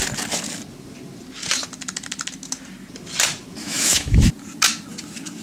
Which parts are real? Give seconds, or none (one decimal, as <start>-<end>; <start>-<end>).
0.0-3.6; 4.3-5.4